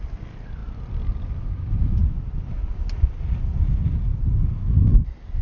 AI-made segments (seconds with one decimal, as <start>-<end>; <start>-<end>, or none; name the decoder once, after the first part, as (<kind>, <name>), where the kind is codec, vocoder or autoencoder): 0.6-1.5 (vocoder, BigVGAN v2)